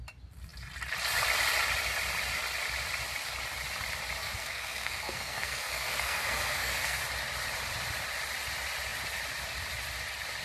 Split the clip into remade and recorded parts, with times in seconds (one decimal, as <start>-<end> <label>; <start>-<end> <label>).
0.0-4.2 recorded; 4.2-7.0 remade; 7.0-10.4 recorded